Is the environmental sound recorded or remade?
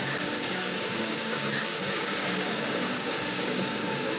remade